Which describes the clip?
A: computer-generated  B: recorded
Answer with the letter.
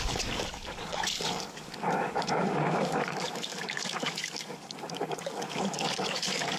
A